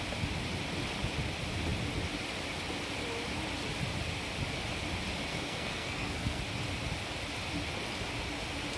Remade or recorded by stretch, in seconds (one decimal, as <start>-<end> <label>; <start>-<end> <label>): 0.0-5.3 recorded; 5.3-6.4 remade; 6.4-8.8 recorded